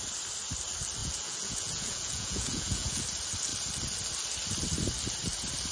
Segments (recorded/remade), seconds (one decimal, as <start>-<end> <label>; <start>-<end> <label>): 0.0-1.0 recorded; 1.0-3.0 remade; 3.0-5.7 recorded